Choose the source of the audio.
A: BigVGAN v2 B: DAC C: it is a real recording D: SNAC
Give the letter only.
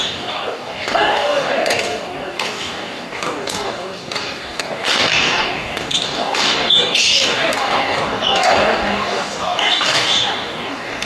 B